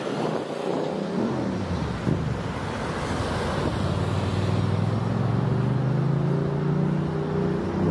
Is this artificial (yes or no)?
no